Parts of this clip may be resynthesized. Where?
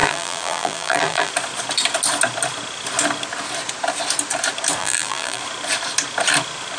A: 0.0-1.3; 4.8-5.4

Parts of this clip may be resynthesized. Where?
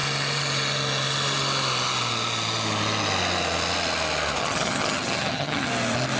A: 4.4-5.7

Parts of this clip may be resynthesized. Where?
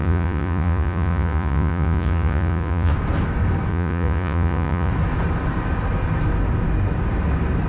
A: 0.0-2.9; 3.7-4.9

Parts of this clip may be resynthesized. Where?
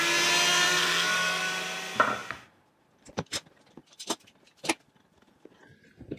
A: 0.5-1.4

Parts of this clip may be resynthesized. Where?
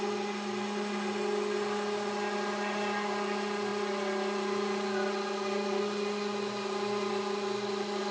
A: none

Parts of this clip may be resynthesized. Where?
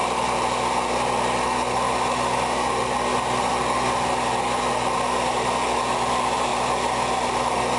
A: none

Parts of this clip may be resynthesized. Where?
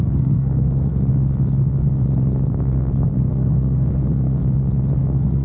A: 0.0-1.1; 3.2-4.4; 5.0-5.4